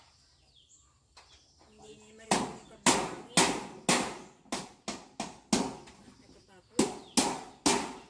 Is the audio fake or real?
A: real